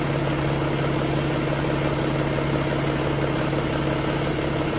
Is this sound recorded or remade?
recorded